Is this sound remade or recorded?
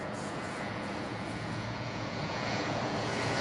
remade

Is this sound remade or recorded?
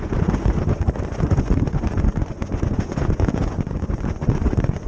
remade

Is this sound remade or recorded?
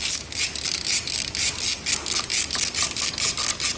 recorded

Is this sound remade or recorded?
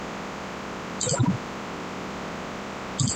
recorded